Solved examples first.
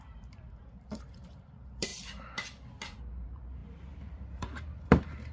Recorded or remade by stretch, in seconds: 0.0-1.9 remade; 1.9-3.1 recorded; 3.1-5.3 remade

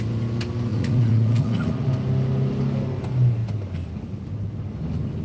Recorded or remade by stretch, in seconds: 0.0-0.7 recorded; 0.7-1.9 remade; 1.9-5.2 recorded

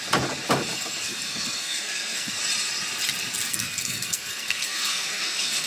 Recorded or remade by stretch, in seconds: 0.0-0.7 recorded; 0.7-2.4 remade; 2.4-3.5 recorded; 3.5-5.7 remade

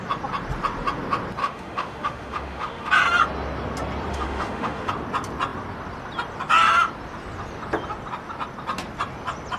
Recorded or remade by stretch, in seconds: 0.0-1.4 recorded; 1.4-2.9 remade; 2.9-4.1 recorded; 4.1-4.9 remade; 4.9-9.6 recorded

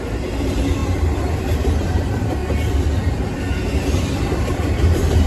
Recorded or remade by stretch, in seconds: 0.0-2.4 remade; 2.4-4.0 recorded; 4.0-5.3 remade

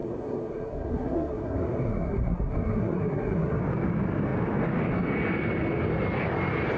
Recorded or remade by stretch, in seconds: 0.0-3.6 remade; 3.6-6.8 recorded